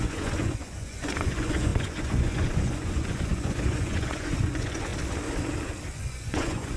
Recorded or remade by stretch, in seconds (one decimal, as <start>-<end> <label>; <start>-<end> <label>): 0.0-4.9 remade; 4.9-5.9 recorded; 5.9-6.8 remade